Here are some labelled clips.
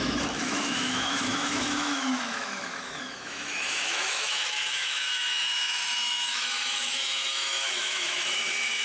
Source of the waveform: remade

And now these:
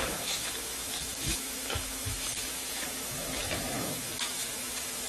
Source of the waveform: remade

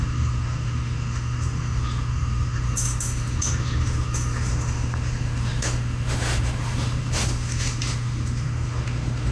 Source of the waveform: remade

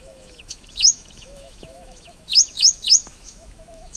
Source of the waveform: remade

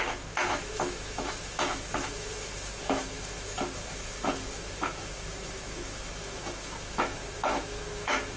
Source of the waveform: remade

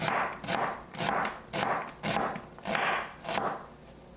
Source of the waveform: recorded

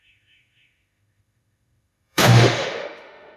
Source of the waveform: remade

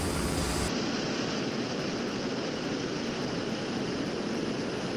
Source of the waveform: recorded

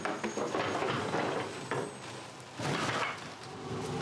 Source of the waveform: recorded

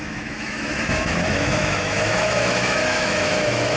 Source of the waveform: remade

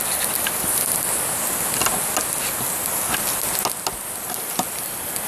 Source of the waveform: recorded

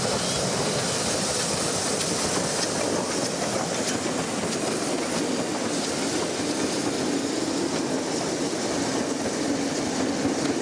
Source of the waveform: recorded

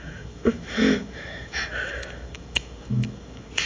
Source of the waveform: remade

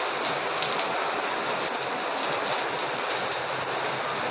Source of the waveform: recorded